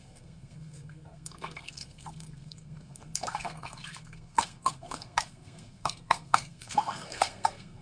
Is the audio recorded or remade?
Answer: remade